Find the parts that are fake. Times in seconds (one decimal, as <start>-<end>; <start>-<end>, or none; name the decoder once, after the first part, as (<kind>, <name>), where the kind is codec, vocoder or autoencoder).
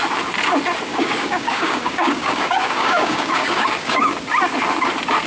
0.9-4.1 (codec, DAC)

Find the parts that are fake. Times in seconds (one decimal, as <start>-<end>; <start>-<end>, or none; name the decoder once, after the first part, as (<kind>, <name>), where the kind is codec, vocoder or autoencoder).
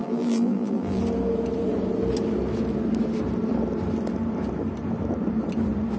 0.0-1.0 (vocoder, BigVGAN v2)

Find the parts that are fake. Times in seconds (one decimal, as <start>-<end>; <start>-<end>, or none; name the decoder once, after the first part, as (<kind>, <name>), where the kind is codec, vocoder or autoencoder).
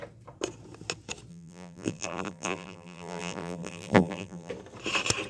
1.3-4.5 (vocoder, BigVGAN v2)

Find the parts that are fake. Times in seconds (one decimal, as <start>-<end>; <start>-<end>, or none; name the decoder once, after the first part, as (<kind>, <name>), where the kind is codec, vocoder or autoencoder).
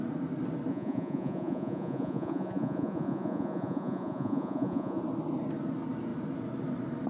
0.7-5.0 (vocoder, Vocos)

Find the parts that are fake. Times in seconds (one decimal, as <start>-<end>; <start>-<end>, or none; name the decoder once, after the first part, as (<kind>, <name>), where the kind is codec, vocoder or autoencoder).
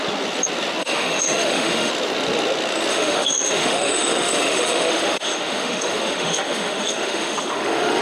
0.8-1.9 (autoencoder, DAC-VAE); 2.9-8.0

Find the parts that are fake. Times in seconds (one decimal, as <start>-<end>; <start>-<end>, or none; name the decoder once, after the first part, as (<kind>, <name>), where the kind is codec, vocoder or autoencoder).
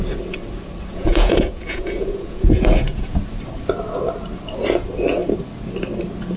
0.9-3.2 (vocoder, Vocos)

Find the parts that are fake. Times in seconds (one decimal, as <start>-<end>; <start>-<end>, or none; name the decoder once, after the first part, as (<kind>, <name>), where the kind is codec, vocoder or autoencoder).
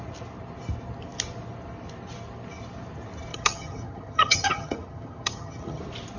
3.3-5.8 (vocoder, HiFi-GAN)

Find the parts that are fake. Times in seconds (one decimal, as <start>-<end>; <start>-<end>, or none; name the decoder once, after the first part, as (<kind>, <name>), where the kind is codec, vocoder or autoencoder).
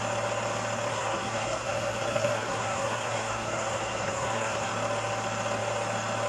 0.9-4.7 (codec, SNAC)